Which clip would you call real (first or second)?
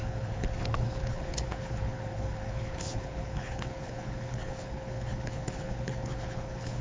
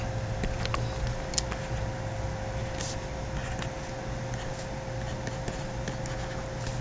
second